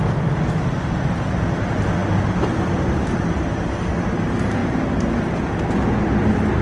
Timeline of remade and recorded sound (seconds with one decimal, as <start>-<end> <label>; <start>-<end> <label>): 0.0-6.6 recorded